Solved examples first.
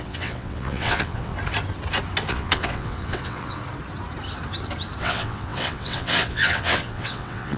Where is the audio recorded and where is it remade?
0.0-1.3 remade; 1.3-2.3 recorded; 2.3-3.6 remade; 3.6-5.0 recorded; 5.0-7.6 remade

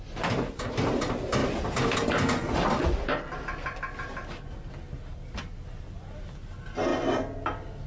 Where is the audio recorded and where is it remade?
0.0-7.9 recorded

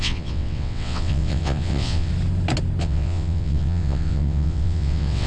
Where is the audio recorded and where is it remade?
0.0-2.1 remade; 2.1-2.8 recorded; 2.8-5.3 remade